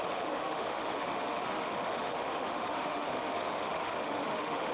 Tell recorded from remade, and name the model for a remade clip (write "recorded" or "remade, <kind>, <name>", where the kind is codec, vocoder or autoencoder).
remade, autoencoder, DAC-VAE